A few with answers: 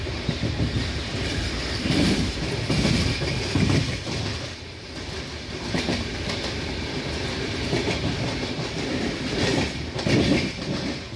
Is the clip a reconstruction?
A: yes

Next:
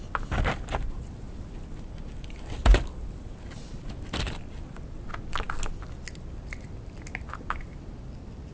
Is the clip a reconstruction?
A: no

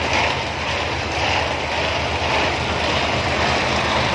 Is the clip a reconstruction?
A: yes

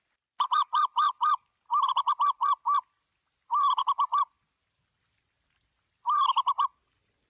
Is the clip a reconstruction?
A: no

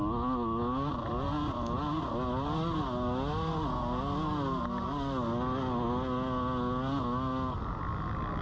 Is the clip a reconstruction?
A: no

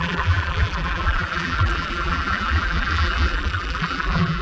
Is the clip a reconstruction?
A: yes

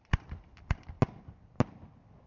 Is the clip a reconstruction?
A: no